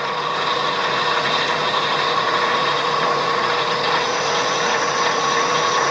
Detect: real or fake fake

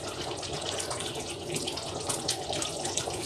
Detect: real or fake fake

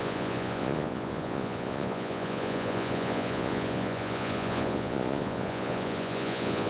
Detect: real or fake fake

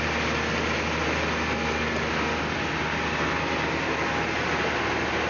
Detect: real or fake real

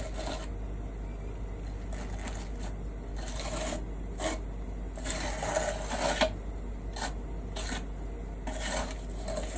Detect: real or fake real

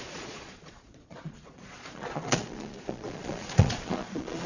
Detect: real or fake fake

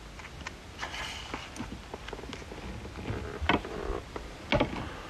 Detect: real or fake real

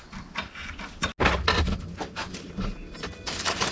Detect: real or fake real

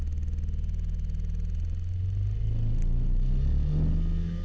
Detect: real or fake real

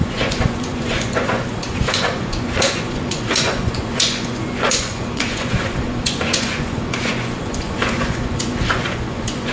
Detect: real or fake fake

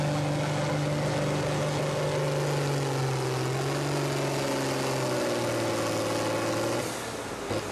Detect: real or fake real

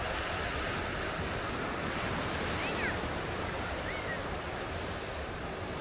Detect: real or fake real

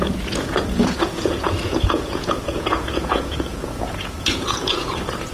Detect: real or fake fake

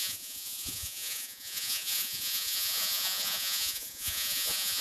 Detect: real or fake fake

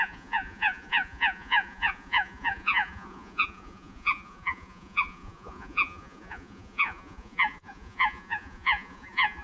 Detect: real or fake fake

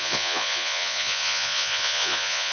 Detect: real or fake fake